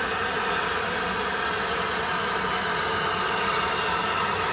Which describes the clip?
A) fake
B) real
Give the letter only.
B